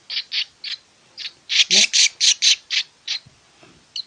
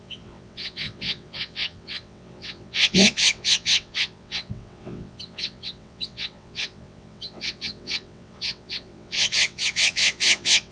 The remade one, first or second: second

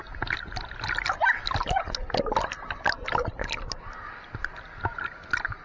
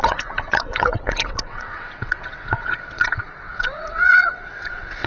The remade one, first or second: second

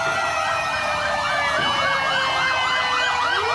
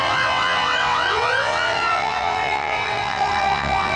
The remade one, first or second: second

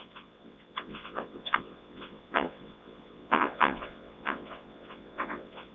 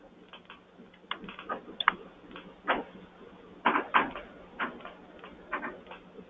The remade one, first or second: first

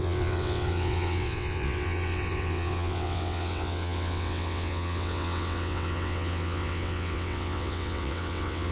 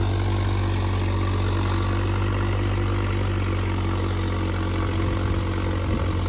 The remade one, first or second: first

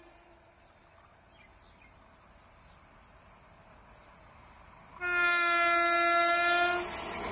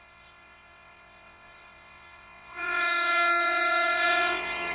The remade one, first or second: second